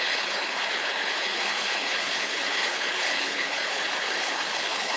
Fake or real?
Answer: fake